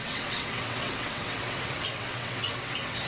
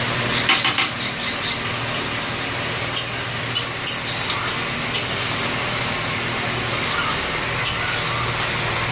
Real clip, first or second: second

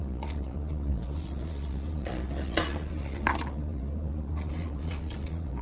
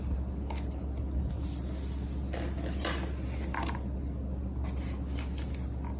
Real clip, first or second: second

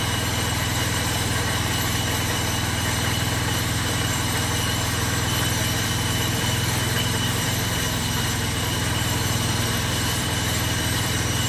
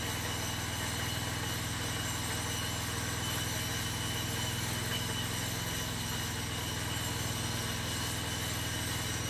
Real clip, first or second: second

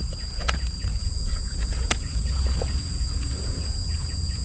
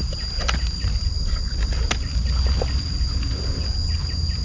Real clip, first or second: second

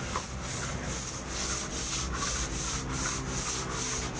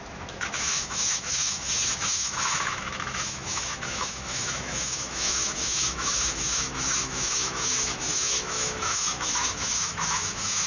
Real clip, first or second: first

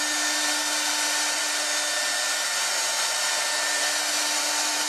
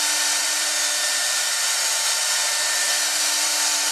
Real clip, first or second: first